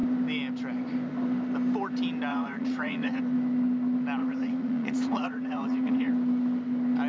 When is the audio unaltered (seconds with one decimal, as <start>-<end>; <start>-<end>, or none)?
0.0-2.3; 3.2-4.2; 6.1-7.1